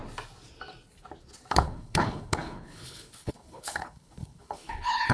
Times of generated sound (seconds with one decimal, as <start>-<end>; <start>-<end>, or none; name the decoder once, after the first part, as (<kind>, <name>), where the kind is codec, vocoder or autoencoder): 1.5-5.1 (codec, HILCodec)